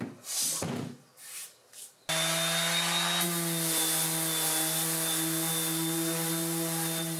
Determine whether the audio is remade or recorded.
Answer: recorded